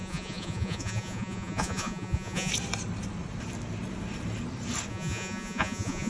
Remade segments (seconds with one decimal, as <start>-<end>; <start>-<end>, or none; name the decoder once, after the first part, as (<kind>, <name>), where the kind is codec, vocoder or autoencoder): 0.0-2.5 (vocoder, Vocos); 4.9-6.1